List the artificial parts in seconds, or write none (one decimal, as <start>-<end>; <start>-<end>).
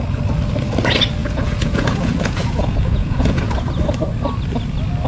1.2-3.5